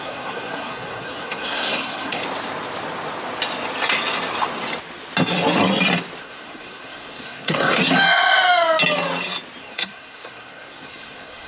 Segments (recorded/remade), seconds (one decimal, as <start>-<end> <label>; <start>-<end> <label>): 0.0-2.2 remade; 2.2-6.2 recorded; 6.2-7.8 remade; 7.8-9.6 recorded; 9.6-11.5 remade